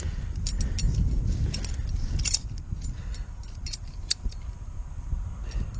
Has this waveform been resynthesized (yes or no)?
no